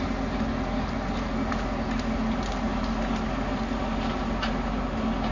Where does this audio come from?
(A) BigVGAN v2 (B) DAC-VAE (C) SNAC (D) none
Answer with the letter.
D